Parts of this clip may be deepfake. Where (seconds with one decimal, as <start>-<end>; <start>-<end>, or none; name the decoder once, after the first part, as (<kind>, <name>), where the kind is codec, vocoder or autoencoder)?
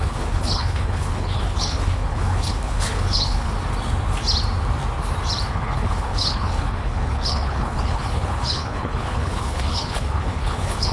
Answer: 0.0-3.5 (codec, HILCodec); 5.5-10.9